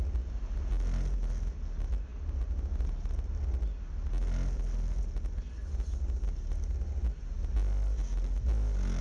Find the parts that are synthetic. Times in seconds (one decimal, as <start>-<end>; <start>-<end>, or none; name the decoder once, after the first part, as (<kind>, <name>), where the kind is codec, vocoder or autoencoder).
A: none